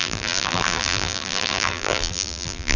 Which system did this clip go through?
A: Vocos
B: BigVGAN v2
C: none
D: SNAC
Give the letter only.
B